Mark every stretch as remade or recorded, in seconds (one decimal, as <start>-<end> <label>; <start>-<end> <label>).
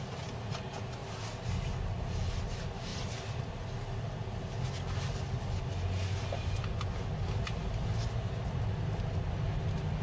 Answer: 0.0-10.0 recorded